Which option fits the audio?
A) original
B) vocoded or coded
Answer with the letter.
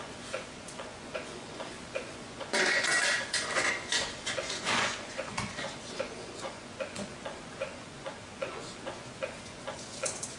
B